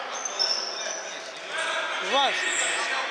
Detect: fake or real real